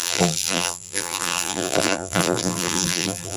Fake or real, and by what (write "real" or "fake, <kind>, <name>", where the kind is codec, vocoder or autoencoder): fake, vocoder, BigVGAN v2